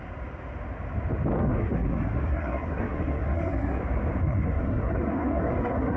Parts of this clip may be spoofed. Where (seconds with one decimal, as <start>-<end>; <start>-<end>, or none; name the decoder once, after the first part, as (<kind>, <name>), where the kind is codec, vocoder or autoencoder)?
1.4-3.8 (codec, SNAC); 4.2-6.0